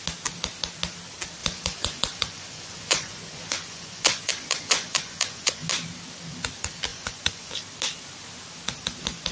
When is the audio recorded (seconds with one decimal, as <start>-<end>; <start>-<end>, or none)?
0.0-1.4; 5.7-6.9; 7.5-9.3